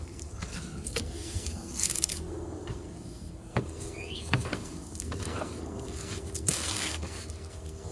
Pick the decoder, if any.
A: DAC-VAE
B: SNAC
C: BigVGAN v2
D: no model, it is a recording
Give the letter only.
B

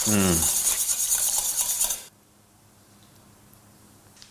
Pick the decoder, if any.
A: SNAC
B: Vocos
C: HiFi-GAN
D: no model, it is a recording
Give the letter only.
D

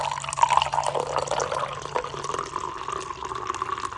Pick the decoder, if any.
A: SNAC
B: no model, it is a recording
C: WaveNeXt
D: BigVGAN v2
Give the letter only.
B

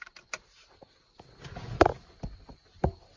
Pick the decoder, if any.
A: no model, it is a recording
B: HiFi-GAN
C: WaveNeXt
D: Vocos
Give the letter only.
A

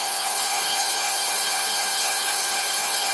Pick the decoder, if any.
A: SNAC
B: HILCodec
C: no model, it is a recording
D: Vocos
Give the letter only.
B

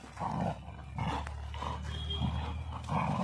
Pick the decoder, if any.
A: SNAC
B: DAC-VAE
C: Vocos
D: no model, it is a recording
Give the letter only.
D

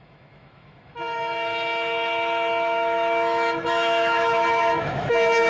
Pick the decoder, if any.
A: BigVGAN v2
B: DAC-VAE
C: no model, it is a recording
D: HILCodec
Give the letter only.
B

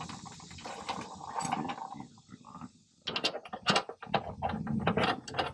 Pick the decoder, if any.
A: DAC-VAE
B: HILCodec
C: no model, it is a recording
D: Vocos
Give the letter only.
C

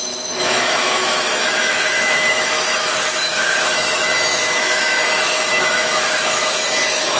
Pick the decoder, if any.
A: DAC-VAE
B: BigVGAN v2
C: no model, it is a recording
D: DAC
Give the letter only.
A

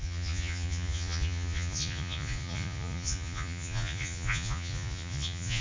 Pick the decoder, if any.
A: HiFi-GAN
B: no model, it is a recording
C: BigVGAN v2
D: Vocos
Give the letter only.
D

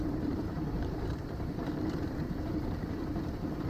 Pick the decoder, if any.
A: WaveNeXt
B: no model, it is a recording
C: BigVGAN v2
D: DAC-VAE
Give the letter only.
C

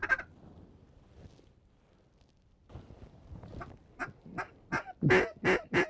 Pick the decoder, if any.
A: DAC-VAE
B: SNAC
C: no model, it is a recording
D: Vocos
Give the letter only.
C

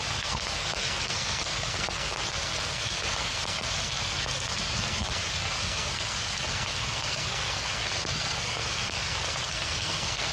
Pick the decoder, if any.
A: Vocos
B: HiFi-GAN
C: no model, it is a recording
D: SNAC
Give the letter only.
D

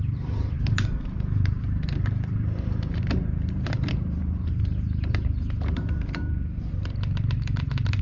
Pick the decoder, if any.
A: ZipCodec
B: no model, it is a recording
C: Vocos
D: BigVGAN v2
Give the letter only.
D